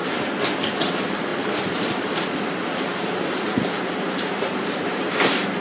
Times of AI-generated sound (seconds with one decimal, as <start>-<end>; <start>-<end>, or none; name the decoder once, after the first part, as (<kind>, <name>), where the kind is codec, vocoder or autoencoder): 0.9-5.6 (vocoder, BigVGAN v2)